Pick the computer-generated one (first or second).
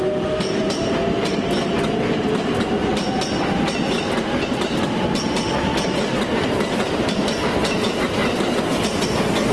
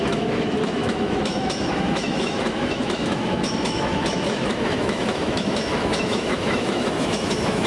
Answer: second